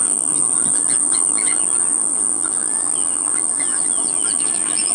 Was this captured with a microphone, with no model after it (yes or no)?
no